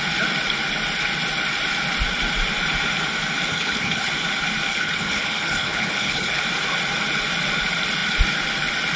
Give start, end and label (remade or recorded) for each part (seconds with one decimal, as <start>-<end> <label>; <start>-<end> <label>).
0.0-3.5 recorded; 3.5-4.1 remade; 4.1-4.7 recorded; 4.7-6.4 remade; 6.4-9.0 recorded